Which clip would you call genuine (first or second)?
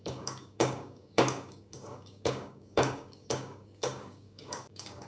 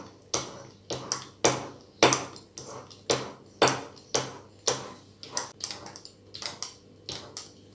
second